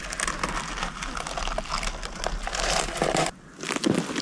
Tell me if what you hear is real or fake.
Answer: real